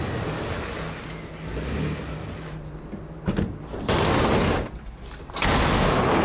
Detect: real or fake real